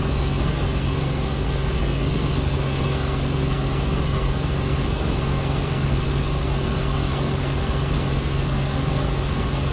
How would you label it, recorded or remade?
remade